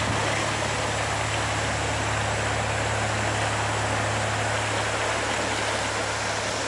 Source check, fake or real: real